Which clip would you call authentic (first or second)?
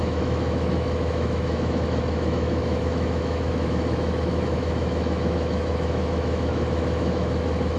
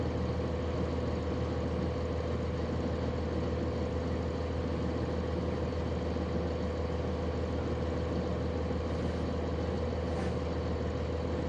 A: second